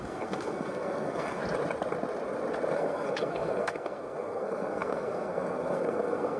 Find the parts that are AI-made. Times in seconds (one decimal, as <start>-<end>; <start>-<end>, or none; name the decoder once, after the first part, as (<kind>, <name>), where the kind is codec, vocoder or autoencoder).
0.0-1.4 (codec, SNAC); 2.7-6.4